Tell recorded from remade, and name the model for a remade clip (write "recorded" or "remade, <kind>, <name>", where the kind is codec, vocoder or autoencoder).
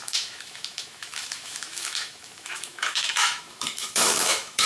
remade, autoencoder, DAC-VAE